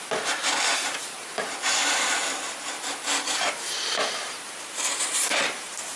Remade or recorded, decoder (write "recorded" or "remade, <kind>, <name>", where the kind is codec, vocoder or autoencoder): remade, vocoder, BigVGAN v2